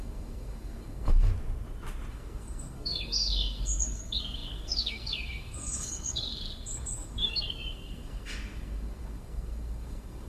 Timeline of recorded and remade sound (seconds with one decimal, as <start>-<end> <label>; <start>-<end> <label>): 0.0-1.3 remade; 1.3-2.1 recorded; 2.1-10.3 remade